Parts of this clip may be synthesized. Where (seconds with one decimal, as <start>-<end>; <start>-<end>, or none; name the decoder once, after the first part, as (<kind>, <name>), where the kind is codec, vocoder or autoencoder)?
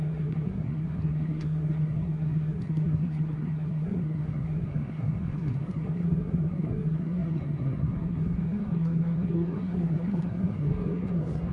0.0-11.5 (codec, SNAC)